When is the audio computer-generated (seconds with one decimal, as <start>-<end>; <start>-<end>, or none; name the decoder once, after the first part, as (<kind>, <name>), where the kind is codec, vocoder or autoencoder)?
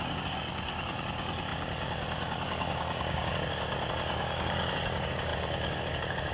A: 0.0-6.3 (codec, DAC)